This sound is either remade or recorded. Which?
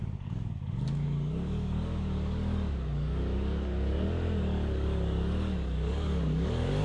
remade